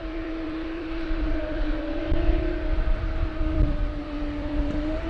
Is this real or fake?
fake